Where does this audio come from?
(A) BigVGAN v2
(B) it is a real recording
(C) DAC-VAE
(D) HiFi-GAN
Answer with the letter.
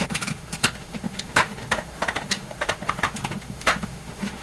C